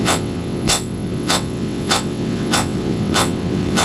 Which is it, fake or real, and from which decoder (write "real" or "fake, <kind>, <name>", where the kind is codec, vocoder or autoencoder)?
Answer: fake, vocoder, WaveNeXt